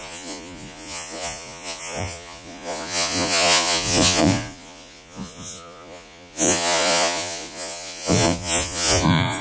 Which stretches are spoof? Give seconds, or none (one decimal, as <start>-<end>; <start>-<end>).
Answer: 0.0-9.4